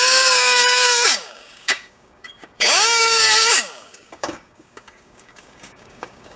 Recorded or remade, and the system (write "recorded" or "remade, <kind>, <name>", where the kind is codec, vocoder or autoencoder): remade, codec, DAC